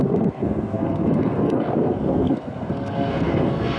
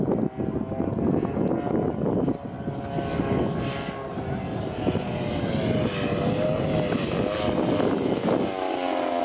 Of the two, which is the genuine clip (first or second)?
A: second